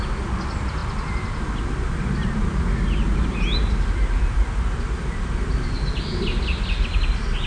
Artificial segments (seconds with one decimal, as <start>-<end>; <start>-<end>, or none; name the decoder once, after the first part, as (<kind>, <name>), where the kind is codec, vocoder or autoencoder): none